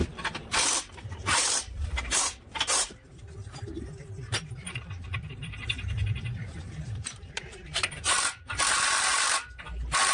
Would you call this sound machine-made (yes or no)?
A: yes